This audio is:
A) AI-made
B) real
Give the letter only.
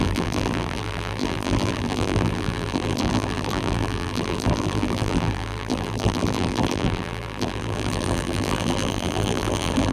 A